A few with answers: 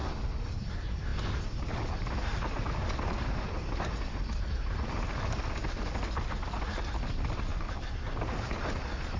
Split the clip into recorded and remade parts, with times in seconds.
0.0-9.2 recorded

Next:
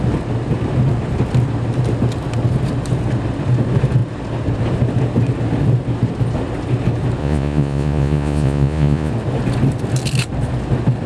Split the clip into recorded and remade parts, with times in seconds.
0.0-7.2 recorded; 7.2-9.1 remade; 9.1-11.1 recorded

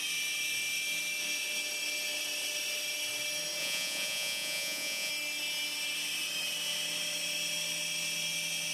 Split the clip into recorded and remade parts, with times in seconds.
0.0-3.6 recorded; 3.6-5.1 remade; 5.1-8.7 recorded

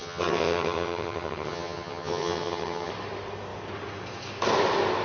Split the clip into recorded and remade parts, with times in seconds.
0.0-2.9 remade; 2.9-5.0 recorded

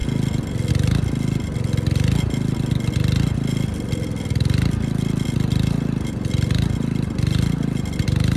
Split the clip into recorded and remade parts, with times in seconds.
0.0-8.4 recorded

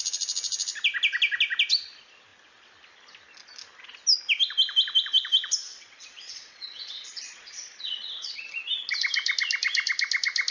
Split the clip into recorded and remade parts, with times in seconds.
0.0-5.7 recorded; 5.7-8.3 remade; 8.3-10.5 recorded

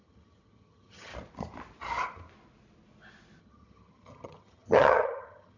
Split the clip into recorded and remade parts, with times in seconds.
0.0-1.1 remade; 1.1-3.4 recorded; 3.4-5.6 remade